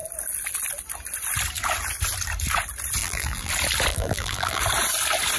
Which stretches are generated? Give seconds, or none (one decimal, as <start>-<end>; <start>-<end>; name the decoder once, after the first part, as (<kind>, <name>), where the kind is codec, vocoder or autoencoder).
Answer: 3.0-3.5 (vocoder, BigVGAN v2); 3.9-4.6